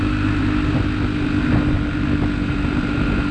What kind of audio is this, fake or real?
real